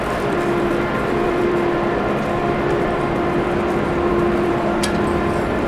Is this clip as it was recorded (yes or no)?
no